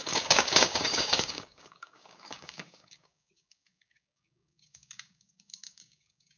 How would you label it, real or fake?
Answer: fake